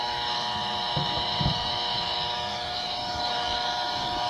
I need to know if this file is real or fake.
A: fake